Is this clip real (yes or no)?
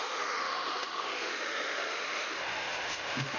no